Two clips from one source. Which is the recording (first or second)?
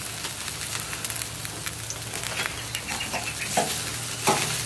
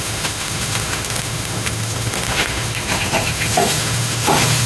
first